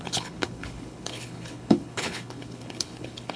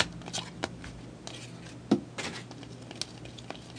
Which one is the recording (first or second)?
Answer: second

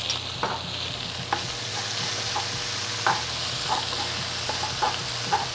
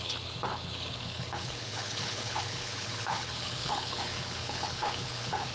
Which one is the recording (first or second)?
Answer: first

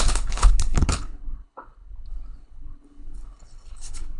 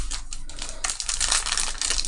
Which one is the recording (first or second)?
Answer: second